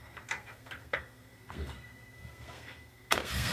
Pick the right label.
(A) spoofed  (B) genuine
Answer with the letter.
A